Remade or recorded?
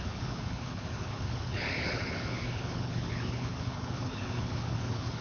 remade